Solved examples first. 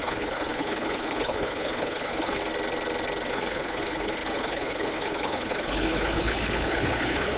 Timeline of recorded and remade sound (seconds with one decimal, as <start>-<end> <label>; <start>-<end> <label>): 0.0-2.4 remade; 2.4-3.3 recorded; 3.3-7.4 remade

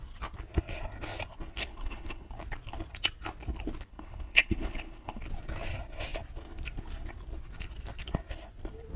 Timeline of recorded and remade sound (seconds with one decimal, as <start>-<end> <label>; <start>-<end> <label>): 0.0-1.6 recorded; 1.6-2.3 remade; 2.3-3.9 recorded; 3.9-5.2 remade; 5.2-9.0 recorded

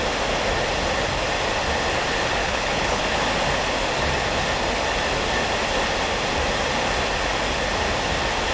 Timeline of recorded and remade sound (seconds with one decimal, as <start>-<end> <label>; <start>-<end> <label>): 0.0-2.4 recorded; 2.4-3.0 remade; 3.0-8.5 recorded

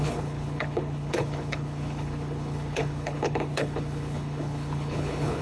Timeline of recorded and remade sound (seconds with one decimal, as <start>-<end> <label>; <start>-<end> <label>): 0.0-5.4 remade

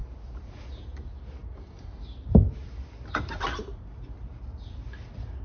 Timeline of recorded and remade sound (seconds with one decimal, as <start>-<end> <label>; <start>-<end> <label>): 0.0-5.4 recorded